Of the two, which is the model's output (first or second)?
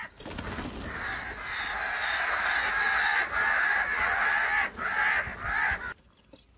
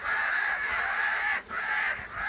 second